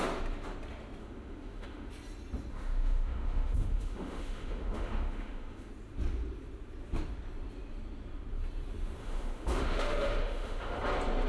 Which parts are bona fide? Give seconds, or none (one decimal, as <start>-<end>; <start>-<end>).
0.0-1.0; 1.9-2.5; 5.7-9.0; 10.8-11.3